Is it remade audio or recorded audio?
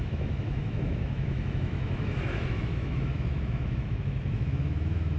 remade